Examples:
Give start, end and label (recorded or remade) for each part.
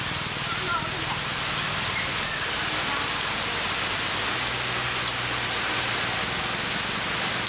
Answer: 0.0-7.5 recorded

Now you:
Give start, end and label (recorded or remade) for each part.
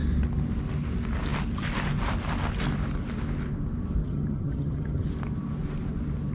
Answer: 0.0-4.0 recorded; 4.0-5.1 remade; 5.1-6.3 recorded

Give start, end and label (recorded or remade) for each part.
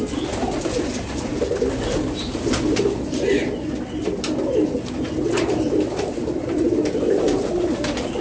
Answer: 0.0-8.2 recorded